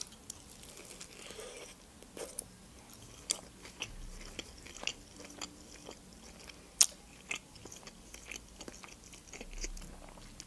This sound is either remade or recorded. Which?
recorded